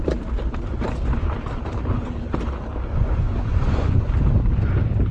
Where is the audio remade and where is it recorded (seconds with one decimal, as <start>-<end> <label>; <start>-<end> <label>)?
0.0-2.9 recorded; 2.9-4.1 remade; 4.1-5.1 recorded